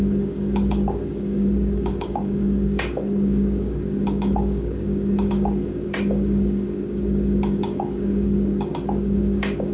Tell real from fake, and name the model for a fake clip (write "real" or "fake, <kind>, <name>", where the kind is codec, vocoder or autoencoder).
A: fake, codec, DAC